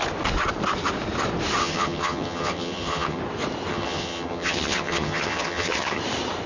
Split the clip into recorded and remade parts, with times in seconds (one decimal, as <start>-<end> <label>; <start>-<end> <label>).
0.0-1.6 recorded; 1.6-3.2 remade; 3.2-3.7 recorded; 3.7-6.0 remade; 6.0-6.5 recorded